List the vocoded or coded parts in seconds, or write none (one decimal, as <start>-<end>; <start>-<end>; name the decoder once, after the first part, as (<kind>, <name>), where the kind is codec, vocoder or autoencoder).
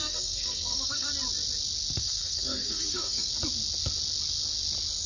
0.0-1.1 (codec, SNAC); 1.9-3.3